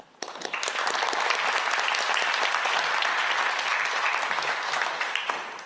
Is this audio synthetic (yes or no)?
no